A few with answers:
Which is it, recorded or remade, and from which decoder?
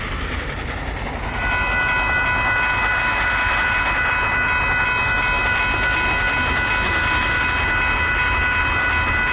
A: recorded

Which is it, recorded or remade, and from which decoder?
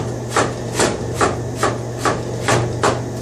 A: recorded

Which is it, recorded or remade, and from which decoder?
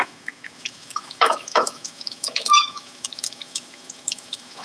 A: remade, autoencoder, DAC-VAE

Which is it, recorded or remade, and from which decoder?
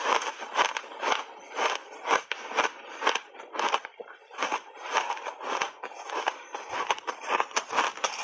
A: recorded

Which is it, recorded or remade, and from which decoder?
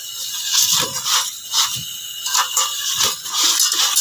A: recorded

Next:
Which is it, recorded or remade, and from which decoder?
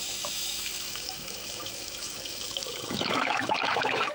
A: remade, autoencoder, DAC-VAE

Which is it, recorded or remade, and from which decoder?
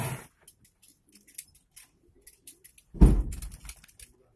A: recorded